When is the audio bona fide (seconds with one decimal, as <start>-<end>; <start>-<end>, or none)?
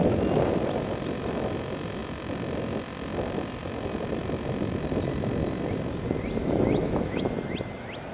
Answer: 0.0-6.4; 7.2-8.1